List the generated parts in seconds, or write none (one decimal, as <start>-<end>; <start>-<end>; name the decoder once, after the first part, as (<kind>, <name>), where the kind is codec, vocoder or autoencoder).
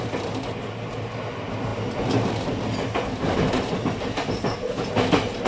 none